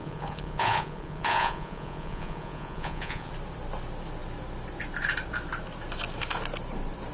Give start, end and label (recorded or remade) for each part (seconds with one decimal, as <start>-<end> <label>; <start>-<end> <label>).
0.0-3.3 remade; 3.3-7.1 recorded